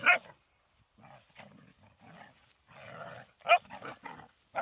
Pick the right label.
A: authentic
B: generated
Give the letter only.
A